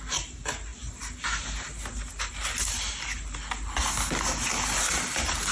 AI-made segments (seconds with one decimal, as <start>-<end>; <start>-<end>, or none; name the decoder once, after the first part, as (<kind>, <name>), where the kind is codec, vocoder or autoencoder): none